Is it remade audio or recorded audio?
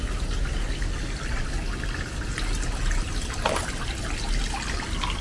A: recorded